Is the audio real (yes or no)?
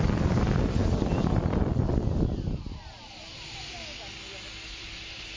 yes